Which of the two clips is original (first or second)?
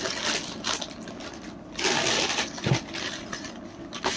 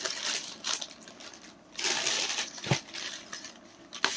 first